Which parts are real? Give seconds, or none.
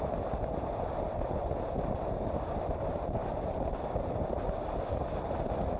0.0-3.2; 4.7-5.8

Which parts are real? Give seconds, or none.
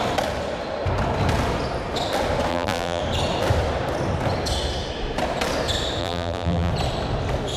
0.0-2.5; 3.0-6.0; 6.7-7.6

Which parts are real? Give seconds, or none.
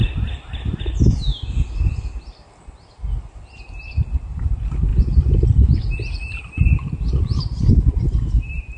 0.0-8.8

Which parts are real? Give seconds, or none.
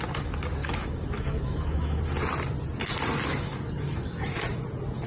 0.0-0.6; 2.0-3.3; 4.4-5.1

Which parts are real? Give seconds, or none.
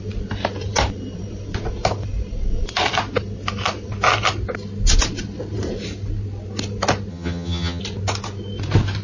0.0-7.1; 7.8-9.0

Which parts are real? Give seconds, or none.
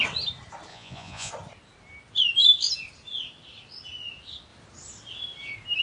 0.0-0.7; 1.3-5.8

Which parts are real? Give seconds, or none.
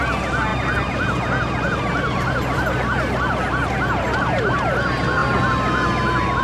0.0-6.4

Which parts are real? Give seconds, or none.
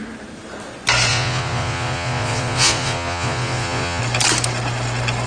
0.0-1.1; 4.0-5.3